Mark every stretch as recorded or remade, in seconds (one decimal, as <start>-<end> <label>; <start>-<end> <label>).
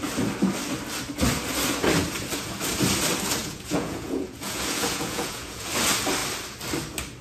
0.0-3.4 recorded; 3.4-5.7 remade; 5.7-7.2 recorded